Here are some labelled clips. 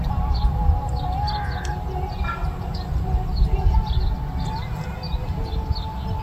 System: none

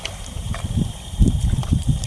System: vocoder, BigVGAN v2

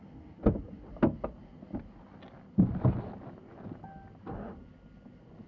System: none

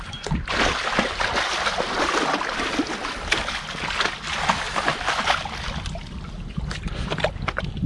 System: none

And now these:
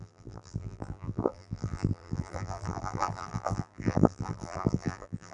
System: vocoder, BigVGAN v2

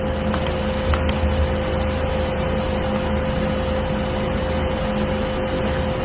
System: none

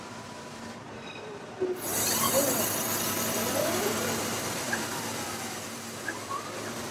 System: vocoder, BigVGAN v2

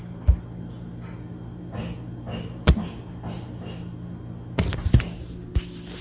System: none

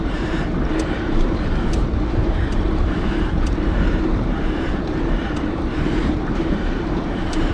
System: vocoder, BigVGAN v2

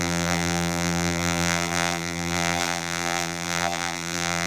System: vocoder, BigVGAN v2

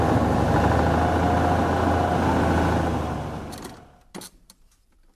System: none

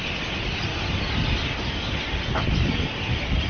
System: none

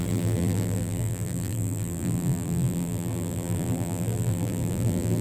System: vocoder, BigVGAN v2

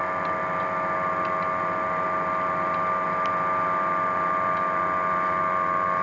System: none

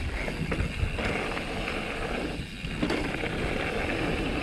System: none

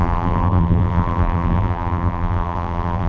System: vocoder, BigVGAN v2